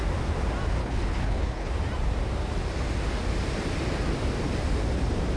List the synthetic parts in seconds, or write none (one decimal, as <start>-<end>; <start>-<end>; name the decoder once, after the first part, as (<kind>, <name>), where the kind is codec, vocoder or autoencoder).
0.8-1.7 (codec, HILCodec)